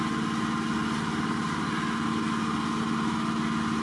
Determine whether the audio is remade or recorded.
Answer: recorded